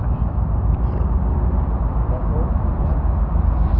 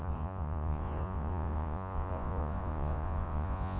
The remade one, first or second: second